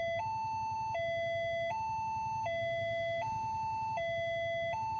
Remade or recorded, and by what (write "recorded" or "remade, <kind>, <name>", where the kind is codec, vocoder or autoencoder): recorded